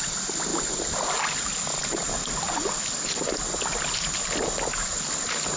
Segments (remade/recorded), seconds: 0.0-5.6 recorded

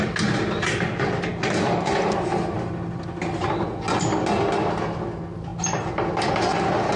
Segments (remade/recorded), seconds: 0.0-7.0 recorded